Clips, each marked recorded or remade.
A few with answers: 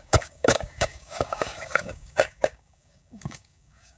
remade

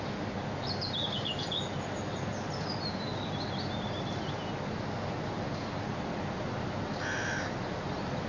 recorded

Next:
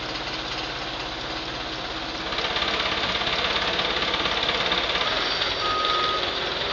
recorded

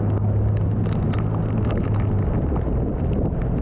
recorded